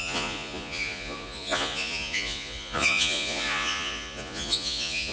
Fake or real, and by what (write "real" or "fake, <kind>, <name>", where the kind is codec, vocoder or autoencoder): fake, vocoder, Vocos